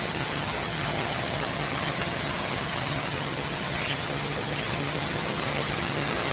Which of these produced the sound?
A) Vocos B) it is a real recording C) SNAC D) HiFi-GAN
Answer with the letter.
D